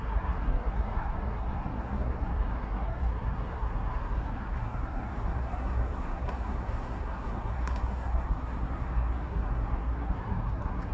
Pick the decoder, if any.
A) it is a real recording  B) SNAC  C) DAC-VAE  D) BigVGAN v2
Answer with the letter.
B